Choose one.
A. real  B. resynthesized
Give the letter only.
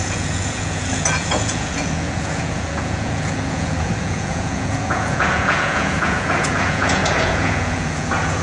B